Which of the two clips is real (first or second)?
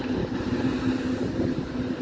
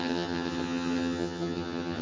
first